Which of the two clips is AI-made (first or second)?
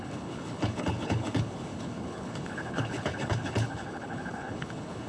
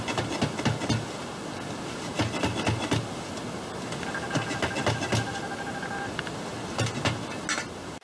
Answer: first